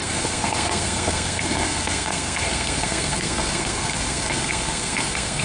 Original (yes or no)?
no